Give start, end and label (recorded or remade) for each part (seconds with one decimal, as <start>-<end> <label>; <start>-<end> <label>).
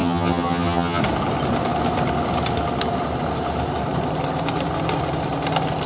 0.0-1.0 remade; 1.0-5.9 recorded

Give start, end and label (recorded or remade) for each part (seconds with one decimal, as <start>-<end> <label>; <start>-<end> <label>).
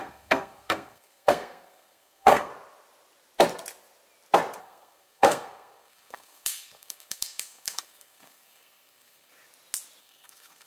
0.0-2.5 remade; 2.5-4.6 recorded; 4.6-9.3 remade; 9.3-10.0 recorded; 10.0-10.7 remade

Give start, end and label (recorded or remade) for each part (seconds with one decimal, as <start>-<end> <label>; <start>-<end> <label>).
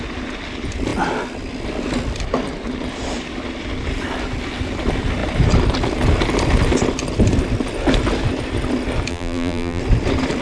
0.0-9.1 recorded; 9.1-9.8 remade; 9.8-10.4 recorded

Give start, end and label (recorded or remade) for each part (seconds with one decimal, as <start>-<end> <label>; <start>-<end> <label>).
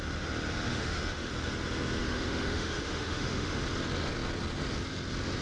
0.0-0.7 recorded; 0.7-1.3 remade; 1.3-2.0 recorded; 2.0-3.6 remade; 3.6-5.4 recorded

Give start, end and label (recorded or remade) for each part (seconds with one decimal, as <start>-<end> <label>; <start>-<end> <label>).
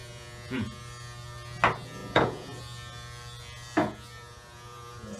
0.0-0.8 remade; 0.8-2.0 recorded; 2.0-2.6 remade; 2.6-3.8 recorded; 3.8-5.2 remade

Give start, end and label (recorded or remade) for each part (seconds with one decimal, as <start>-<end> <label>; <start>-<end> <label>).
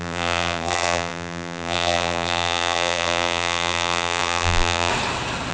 0.0-4.9 remade; 4.9-5.5 recorded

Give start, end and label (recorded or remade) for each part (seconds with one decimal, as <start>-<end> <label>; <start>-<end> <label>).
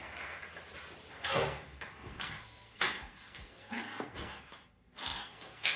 0.0-0.4 remade; 0.4-1.1 recorded; 1.1-5.8 remade